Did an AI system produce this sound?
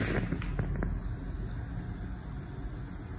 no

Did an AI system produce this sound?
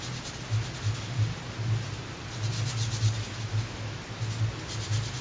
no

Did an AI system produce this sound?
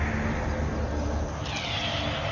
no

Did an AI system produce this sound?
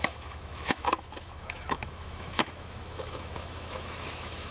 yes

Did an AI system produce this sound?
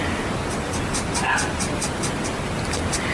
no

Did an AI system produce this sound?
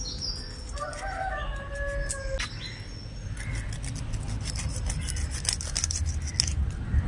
no